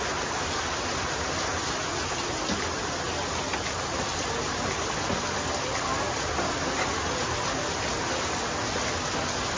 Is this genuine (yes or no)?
yes